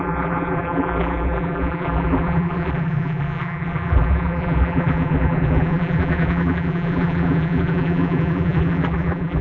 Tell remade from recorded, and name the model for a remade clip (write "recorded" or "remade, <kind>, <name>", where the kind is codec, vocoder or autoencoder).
remade, vocoder, BigVGAN v2